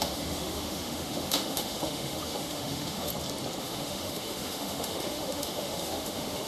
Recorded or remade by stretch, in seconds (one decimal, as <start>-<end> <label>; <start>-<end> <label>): 0.0-3.1 remade; 3.1-3.6 recorded; 3.6-6.5 remade